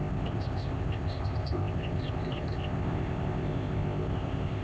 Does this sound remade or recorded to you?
remade